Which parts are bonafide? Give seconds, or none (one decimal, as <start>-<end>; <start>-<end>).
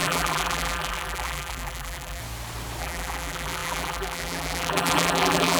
2.2-2.8